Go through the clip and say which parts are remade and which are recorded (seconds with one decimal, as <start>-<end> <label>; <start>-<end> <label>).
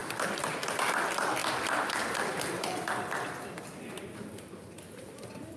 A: 0.0-5.6 recorded